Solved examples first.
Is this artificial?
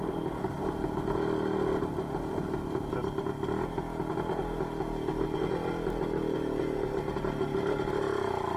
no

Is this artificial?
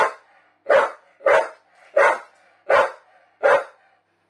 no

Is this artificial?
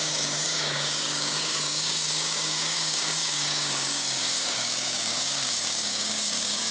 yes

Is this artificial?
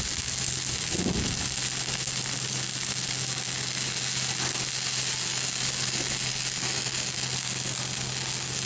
no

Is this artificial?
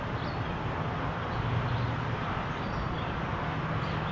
no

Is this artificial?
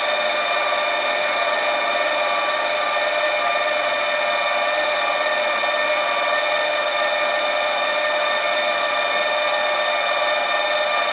no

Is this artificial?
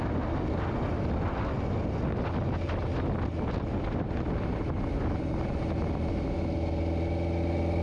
no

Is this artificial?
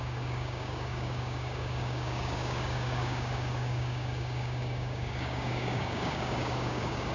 yes